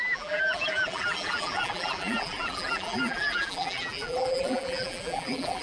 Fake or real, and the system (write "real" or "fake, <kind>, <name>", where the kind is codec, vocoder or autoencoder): fake, vocoder, BigVGAN v2